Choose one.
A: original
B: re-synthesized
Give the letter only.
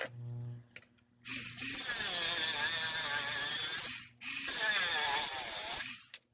A